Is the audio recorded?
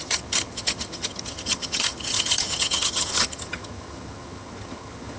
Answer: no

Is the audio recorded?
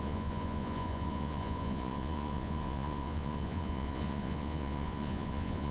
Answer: no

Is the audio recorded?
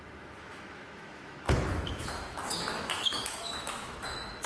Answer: no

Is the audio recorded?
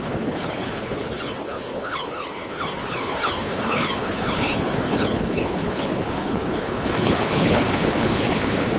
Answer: no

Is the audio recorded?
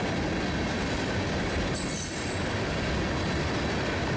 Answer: yes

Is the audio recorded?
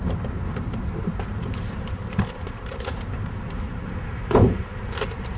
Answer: no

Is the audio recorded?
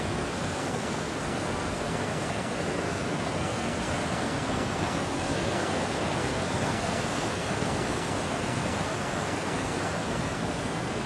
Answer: no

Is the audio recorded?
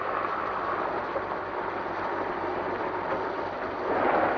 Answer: yes